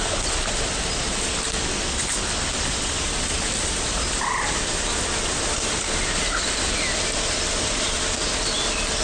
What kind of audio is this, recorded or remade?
recorded